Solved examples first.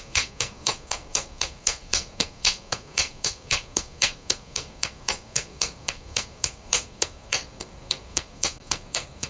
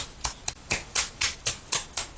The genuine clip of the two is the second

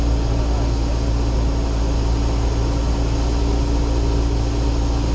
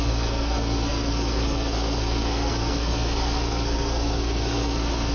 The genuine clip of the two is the first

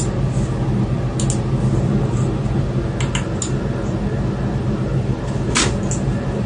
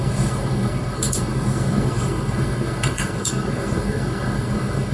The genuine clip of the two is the first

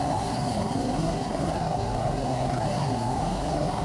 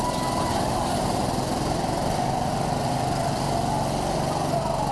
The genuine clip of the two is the second